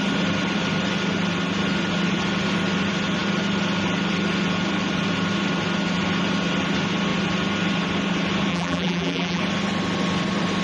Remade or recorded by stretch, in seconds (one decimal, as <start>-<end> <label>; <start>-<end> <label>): 0.0-8.5 recorded; 8.5-9.4 remade; 9.4-10.6 recorded